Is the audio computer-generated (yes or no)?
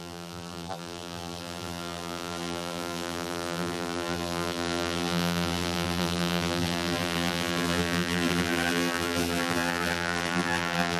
yes